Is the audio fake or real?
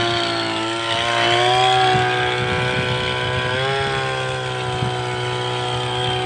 real